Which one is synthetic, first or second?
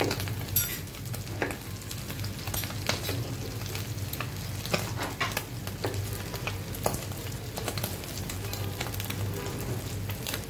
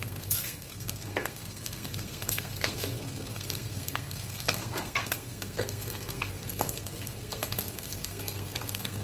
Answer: second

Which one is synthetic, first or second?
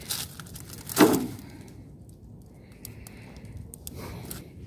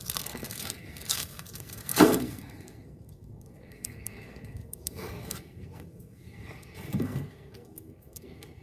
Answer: second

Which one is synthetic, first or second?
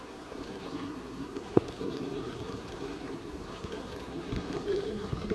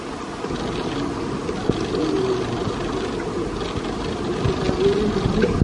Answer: first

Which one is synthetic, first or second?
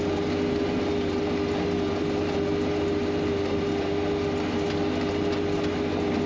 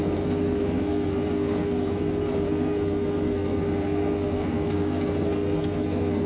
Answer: second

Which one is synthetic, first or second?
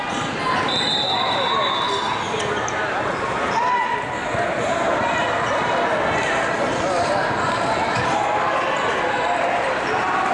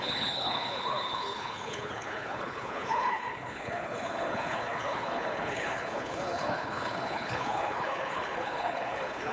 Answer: second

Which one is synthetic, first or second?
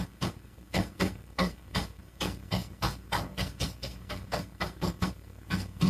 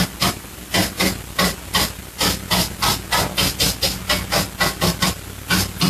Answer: first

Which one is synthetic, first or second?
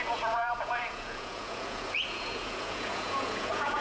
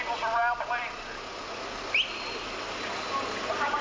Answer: first